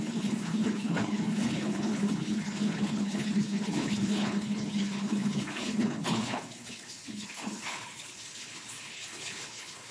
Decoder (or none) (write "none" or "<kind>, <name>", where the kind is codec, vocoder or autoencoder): codec, HILCodec